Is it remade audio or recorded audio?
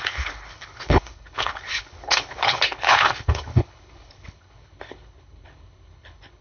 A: remade